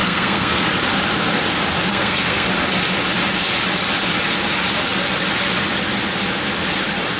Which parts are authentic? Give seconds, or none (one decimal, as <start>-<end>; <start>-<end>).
0.7-1.9; 2.5-7.2

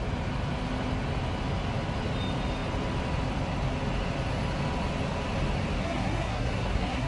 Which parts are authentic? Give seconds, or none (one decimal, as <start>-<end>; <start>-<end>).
0.0-5.8

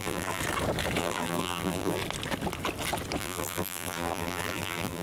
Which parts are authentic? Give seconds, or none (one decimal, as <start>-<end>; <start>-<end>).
0.4-1.0; 2.0-3.2

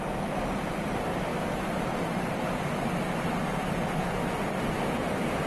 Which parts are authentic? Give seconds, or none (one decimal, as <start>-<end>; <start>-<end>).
none

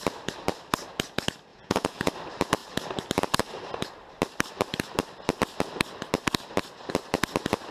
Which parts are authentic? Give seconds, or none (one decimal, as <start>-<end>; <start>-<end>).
0.0-1.5; 2.1-7.7

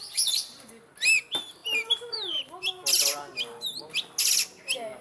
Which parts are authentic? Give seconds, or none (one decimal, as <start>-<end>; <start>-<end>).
0.0-5.0

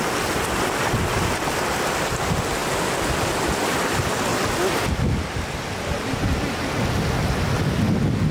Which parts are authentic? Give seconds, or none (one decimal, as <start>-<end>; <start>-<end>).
0.0-2.6; 3.7-8.3